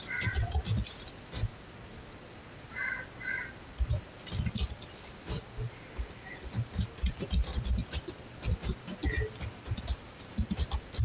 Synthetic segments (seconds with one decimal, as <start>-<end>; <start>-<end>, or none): none